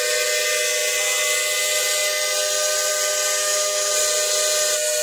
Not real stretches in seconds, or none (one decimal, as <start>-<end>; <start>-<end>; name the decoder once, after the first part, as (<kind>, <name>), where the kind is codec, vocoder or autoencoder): 3.4-3.9 (autoencoder, DAC-VAE)